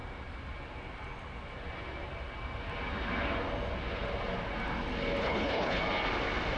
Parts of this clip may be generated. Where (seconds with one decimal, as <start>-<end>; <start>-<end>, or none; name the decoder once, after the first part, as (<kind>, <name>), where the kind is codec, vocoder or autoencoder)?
5.2-5.8 (codec, HILCodec)